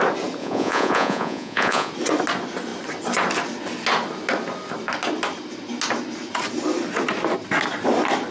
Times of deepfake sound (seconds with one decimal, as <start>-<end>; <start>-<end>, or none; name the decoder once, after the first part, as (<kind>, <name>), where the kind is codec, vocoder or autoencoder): 0.4-1.9 (vocoder, Vocos)